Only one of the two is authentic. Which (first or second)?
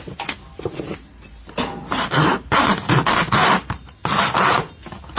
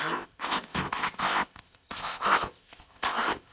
first